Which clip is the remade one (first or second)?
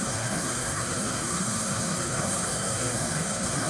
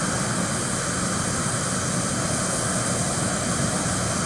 first